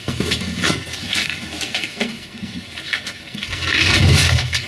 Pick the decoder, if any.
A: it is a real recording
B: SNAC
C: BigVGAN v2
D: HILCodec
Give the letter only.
B